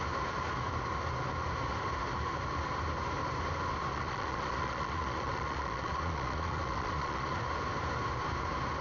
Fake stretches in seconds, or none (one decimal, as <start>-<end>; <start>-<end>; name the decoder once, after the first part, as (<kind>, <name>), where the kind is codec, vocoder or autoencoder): 3.9-7.4 (vocoder, Vocos)